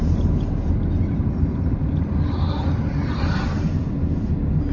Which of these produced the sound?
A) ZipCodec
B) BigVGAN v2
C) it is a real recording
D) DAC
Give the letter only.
C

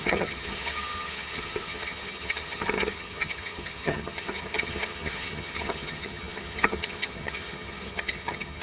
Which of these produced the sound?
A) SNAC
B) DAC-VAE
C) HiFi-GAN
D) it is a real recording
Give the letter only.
C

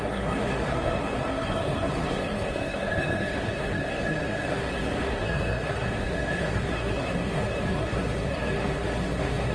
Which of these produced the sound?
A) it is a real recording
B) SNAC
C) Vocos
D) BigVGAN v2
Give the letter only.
B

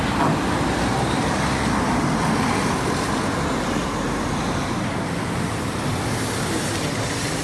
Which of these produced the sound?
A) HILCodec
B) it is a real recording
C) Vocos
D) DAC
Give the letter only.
B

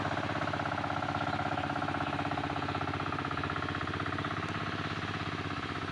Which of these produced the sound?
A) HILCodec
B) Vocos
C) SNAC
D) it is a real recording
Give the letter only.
D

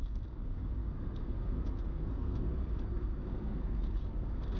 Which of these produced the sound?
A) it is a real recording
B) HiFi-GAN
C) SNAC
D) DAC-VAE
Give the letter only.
C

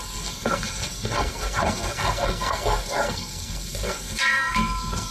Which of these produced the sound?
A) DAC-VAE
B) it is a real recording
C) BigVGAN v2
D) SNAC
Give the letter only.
D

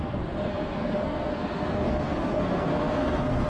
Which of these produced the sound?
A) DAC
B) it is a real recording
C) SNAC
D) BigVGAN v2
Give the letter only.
C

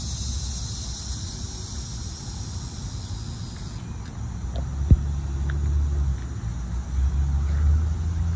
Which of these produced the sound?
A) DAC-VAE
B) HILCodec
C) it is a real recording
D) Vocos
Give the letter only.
C